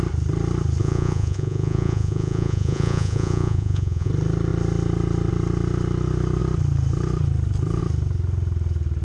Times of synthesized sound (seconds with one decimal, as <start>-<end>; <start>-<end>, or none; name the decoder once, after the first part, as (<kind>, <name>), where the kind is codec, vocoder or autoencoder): 0.8-4.1 (vocoder, Vocos)